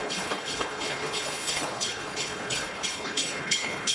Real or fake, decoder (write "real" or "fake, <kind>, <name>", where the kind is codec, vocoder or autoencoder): fake, codec, HILCodec